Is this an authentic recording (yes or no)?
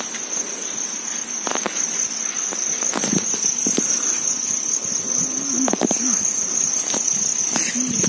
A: yes